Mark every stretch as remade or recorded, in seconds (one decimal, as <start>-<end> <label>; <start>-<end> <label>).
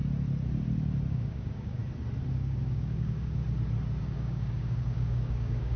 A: 0.0-1.1 recorded; 1.1-1.8 remade; 1.8-2.3 recorded; 2.3-3.4 remade; 3.4-4.0 recorded; 4.0-5.8 remade